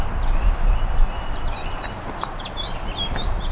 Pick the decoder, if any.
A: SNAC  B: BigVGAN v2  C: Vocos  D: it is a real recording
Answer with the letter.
B